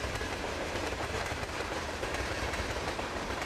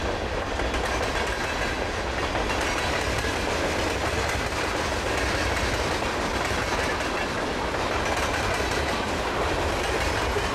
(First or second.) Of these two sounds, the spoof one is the first